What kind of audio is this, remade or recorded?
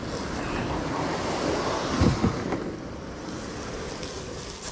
recorded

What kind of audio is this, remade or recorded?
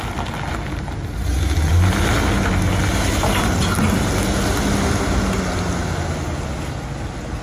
recorded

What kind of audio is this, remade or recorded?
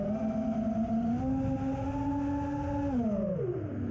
recorded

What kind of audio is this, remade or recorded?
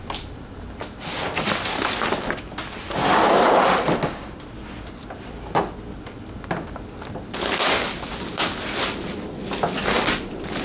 recorded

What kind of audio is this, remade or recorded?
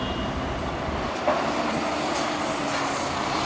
recorded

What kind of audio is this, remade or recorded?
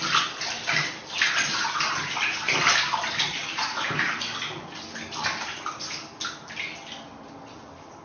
recorded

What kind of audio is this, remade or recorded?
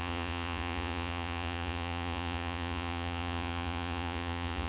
remade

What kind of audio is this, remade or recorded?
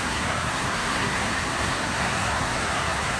remade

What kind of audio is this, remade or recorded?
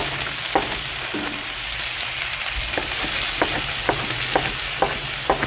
recorded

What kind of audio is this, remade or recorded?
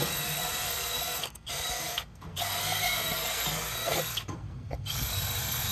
remade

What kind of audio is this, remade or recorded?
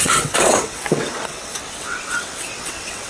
remade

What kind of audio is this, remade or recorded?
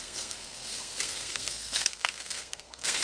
remade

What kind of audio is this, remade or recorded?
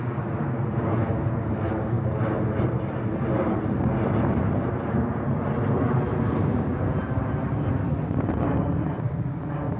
recorded